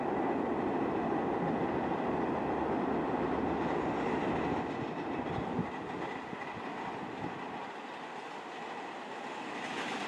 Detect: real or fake real